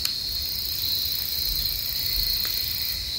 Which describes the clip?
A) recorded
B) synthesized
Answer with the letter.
A